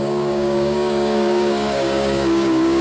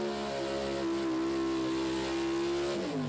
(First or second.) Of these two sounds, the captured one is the second